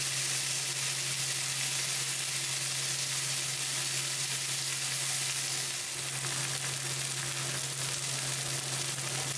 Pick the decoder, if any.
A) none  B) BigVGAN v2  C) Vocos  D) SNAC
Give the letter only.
A